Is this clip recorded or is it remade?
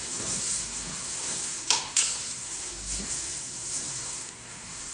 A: remade